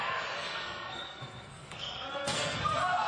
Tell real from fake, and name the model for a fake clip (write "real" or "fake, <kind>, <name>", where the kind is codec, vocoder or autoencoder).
fake, codec, SNAC